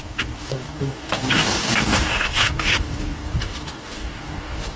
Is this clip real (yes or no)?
no